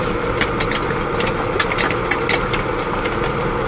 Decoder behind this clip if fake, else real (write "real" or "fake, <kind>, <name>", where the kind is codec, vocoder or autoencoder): real